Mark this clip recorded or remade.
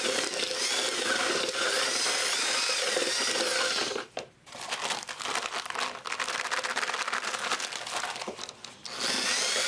recorded